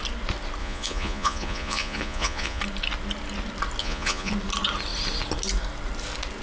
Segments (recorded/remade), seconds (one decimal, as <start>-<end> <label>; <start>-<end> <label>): 0.0-0.6 recorded; 0.6-2.6 remade; 2.6-3.8 recorded; 3.8-4.3 remade; 4.3-6.4 recorded